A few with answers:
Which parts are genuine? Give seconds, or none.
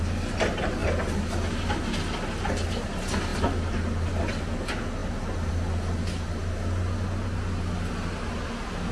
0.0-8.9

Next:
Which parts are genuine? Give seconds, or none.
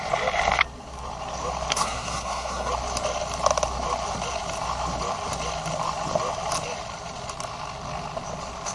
0.0-1.7; 2.7-8.7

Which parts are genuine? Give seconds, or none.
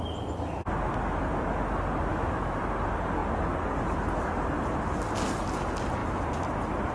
0.0-2.1; 2.6-6.9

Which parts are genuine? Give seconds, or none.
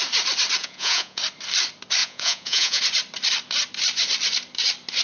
0.0-0.6; 1.2-2.0; 2.8-5.0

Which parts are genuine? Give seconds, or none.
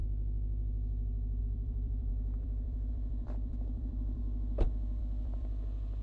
0.0-1.4; 4.2-5.0